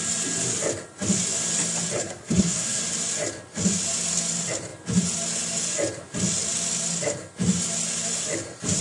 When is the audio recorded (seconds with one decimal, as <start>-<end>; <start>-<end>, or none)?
0.0-2.0; 2.8-8.8